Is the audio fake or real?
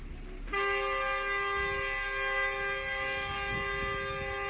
real